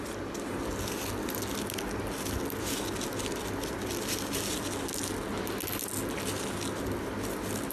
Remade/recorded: recorded